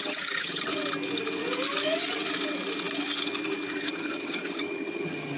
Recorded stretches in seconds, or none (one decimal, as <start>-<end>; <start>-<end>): 0.7-3.9